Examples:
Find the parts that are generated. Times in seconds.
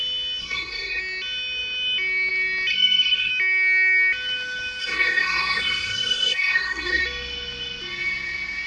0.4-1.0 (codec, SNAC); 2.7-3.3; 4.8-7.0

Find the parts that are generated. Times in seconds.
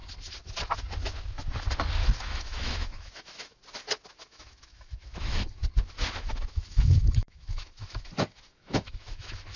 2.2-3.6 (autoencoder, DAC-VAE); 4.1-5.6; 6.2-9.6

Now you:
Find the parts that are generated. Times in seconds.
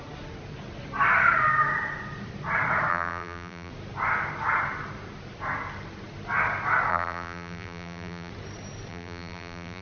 2.9-3.7 (vocoder, BigVGAN v2); 6.9-8.3; 8.9-9.8